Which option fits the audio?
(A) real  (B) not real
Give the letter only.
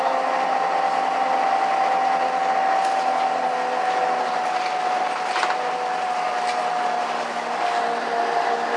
A